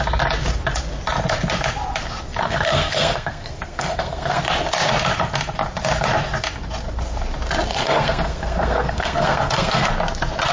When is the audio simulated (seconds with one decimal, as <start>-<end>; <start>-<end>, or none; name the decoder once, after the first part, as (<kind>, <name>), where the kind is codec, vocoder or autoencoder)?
2.4-4.4 (codec, SNAC); 7.7-9.9